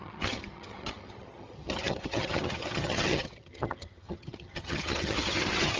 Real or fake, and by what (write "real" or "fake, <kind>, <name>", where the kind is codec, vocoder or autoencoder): fake, vocoder, HiFi-GAN